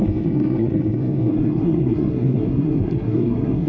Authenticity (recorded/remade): remade